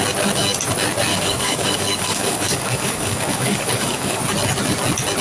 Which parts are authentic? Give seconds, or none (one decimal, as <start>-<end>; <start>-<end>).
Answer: 0.0-1.1; 4.2-5.2